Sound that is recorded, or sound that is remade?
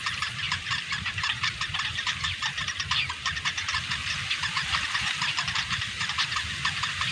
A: remade